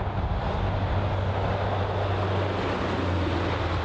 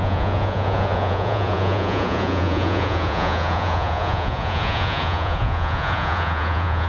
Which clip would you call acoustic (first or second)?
first